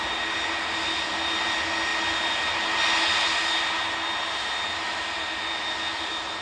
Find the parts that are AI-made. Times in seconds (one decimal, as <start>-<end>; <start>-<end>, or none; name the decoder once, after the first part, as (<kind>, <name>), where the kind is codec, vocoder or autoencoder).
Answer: none